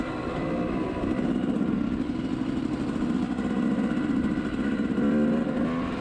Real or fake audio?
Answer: real